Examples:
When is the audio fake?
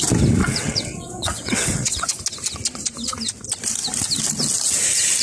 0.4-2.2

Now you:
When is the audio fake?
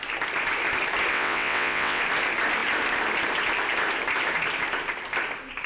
1.1-2.0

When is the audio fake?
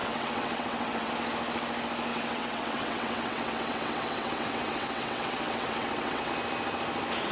0.0-1.1; 2.1-6.3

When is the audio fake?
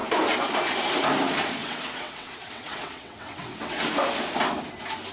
1.6-3.9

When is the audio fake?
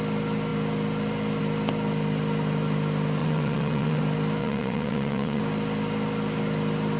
3.2-4.0; 4.4-5.4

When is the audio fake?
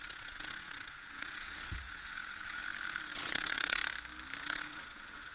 0.0-2.6; 3.1-3.8; 4.4-5.3